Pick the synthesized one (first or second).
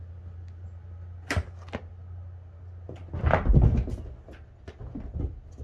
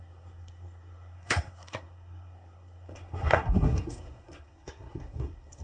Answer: second